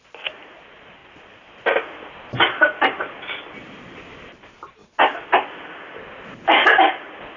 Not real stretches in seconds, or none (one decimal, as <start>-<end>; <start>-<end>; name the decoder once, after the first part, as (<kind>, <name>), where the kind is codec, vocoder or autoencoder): none